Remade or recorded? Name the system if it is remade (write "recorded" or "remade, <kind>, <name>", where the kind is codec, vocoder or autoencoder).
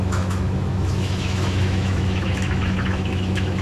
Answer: remade, autoencoder, DAC-VAE